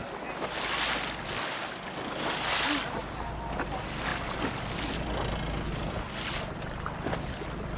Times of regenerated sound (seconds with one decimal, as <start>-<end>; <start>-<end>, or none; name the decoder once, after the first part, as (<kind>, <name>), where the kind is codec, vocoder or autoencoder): none